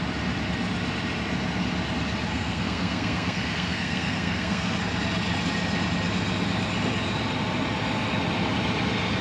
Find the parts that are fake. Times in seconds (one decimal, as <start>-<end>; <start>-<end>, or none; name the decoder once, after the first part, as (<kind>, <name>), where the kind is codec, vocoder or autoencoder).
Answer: 2.3-4.8 (codec, SNAC)